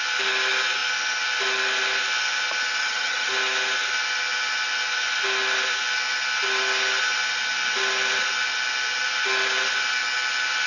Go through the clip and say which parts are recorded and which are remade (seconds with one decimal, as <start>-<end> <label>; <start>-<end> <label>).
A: 0.0-2.8 recorded; 2.8-3.3 remade; 3.3-10.7 recorded